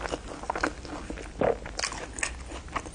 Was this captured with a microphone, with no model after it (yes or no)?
yes